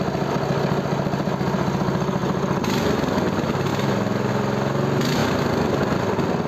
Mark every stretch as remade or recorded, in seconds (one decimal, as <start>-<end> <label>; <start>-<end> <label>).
0.0-6.5 recorded